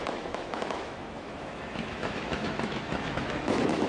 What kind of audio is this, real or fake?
fake